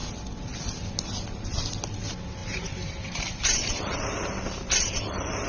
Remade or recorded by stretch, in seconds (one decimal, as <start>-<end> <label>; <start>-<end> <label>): 0.0-2.4 recorded; 2.4-4.0 remade; 4.0-5.5 recorded